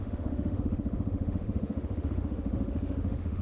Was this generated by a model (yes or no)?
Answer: yes